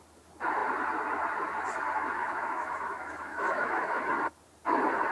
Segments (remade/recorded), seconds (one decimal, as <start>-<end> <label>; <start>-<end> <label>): 0.0-2.2 recorded; 2.2-4.0 remade; 4.0-5.1 recorded